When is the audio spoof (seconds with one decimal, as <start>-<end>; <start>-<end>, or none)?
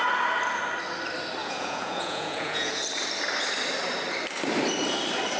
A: 1.4-2.8